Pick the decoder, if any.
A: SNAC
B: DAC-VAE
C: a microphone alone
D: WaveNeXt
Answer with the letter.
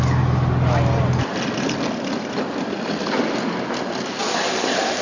C